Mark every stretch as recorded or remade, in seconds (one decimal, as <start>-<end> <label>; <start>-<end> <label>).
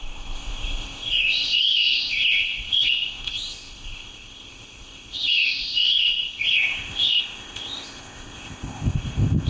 0.0-9.5 remade